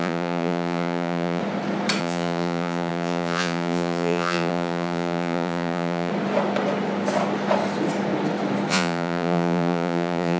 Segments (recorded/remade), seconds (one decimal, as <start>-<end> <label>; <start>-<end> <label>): 0.0-1.4 remade; 1.4-2.0 recorded; 2.0-6.1 remade; 6.1-8.7 recorded; 8.7-10.4 remade